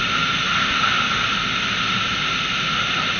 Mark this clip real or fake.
real